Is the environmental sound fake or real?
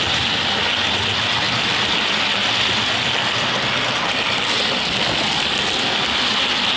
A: real